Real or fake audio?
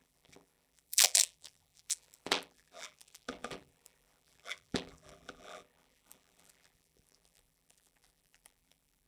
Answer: fake